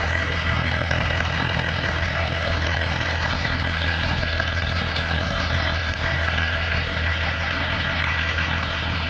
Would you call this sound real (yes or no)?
no